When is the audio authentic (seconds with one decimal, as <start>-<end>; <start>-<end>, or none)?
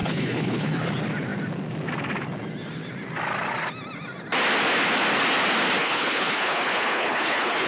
0.9-5.8